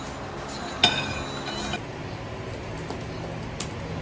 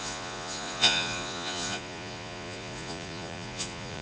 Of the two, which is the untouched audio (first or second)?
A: first